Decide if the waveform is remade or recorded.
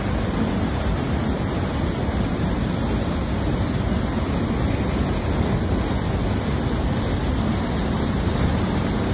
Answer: recorded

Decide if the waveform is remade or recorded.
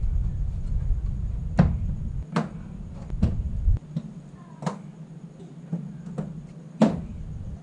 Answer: recorded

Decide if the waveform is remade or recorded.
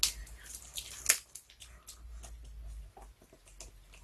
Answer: recorded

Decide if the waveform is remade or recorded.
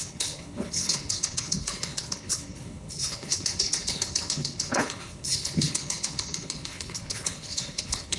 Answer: remade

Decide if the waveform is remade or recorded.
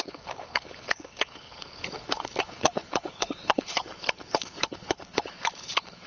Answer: remade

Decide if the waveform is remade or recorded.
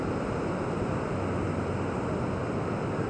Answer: recorded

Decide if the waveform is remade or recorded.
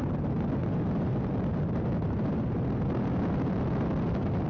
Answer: recorded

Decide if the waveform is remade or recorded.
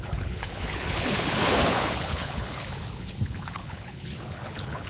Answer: remade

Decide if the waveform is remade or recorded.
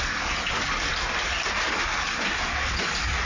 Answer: recorded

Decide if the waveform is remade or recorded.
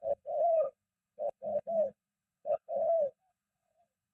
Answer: remade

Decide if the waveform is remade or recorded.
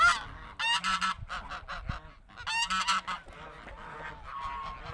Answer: recorded